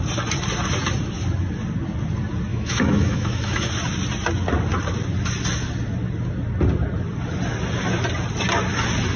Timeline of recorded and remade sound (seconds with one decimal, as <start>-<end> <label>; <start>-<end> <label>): 0.0-2.5 recorded; 2.5-3.7 remade; 3.7-9.2 recorded